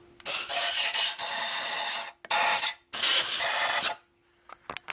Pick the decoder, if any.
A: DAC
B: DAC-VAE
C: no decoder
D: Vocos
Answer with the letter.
C